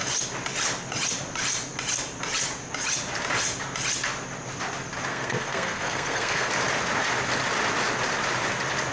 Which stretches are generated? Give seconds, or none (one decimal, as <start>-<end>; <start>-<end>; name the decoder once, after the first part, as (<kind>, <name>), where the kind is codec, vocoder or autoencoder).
5.1-6.5 (codec, SNAC)